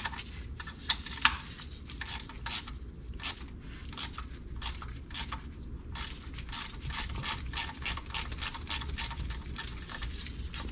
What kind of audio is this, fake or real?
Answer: real